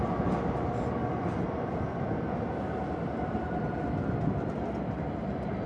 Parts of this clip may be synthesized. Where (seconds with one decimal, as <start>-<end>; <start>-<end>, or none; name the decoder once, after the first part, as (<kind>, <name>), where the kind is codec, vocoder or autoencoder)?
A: none

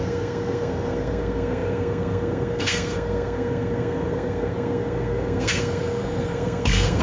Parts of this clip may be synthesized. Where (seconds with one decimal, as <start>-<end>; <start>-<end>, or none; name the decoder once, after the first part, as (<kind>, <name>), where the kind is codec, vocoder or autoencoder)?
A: 0.0-7.0 (codec, SNAC)

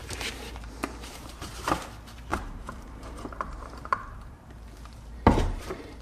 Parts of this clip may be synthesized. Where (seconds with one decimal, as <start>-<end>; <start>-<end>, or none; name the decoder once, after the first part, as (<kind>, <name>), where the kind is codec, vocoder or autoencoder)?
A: 0.0-1.5 (vocoder, BigVGAN v2); 2.3-6.0

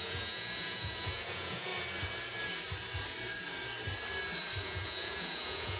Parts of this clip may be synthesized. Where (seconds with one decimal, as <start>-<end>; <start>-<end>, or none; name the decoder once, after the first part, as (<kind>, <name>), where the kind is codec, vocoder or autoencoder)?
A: 0.0-1.7 (vocoder, Vocos); 4.6-5.8

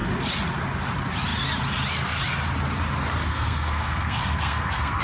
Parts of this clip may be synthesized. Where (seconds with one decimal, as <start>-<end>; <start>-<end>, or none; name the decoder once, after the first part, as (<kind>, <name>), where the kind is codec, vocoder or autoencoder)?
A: 3.3-5.0 (codec, SNAC)

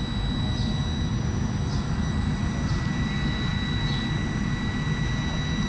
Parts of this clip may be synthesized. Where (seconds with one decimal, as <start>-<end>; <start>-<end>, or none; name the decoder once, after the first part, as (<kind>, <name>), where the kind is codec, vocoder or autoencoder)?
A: none